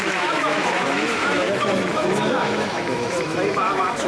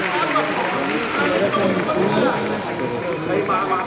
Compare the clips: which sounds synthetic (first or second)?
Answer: first